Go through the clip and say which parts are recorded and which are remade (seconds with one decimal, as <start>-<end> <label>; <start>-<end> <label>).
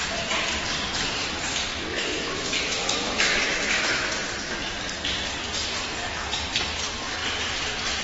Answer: 0.0-1.9 recorded; 1.9-4.1 remade; 4.1-8.0 recorded